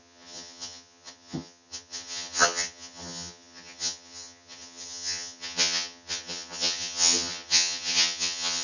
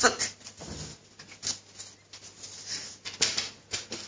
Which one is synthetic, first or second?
first